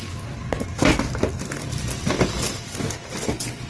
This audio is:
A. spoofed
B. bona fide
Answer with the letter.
B